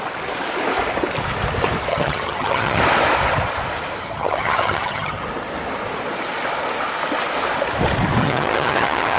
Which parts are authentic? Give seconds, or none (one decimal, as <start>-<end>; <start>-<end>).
0.0-1.9; 2.8-4.0; 5.2-8.2